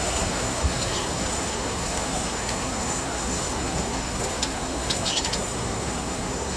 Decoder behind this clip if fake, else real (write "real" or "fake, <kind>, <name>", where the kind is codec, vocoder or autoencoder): fake, codec, SNAC